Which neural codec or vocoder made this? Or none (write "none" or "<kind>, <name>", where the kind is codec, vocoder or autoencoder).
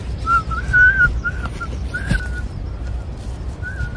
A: none